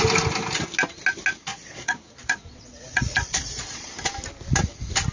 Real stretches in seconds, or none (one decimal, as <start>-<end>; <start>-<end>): 0.0-1.5; 3.9-5.1